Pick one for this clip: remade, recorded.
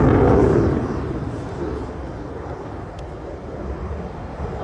recorded